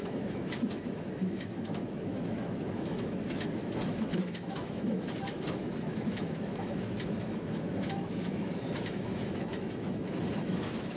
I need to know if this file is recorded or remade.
remade